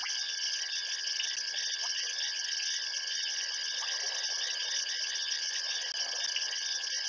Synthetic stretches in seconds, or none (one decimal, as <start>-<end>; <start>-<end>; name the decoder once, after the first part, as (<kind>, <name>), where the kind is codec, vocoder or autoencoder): none